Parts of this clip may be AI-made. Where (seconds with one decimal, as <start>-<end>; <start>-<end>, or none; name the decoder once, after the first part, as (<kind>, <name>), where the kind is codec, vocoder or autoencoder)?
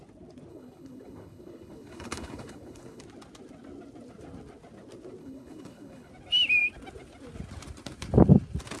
0.5-3.0 (codec, HILCodec); 5.2-6.1